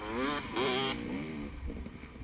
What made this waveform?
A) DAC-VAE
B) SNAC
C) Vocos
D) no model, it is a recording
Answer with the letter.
D